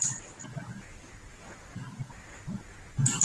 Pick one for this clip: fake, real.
real